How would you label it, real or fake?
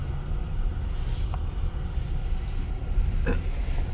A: real